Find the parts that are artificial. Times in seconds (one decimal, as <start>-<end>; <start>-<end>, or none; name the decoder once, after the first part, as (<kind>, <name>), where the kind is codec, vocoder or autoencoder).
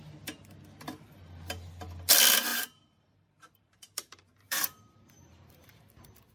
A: 2.5-5.8 (vocoder, BigVGAN v2)